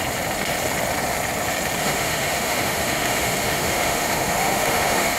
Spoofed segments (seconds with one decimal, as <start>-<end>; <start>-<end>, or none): 1.8-5.2